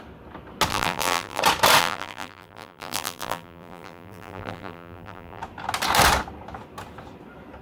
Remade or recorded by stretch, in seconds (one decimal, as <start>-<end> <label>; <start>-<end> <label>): 0.0-0.7 recorded; 0.7-1.4 remade; 1.4-1.8 recorded; 1.8-5.4 remade; 5.4-7.6 recorded